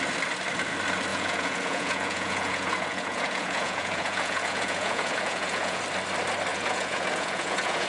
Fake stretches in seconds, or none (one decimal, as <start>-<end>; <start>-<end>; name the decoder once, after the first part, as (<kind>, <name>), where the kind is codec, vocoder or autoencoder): 1.1-5.8 (vocoder, Vocos); 6.5-7.9